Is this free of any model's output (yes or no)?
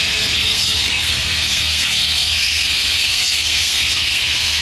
no